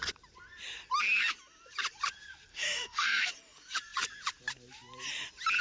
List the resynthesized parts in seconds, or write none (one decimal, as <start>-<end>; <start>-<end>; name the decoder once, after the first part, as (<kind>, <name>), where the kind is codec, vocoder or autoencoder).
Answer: 2.5-3.3 (autoencoder, DAC-VAE)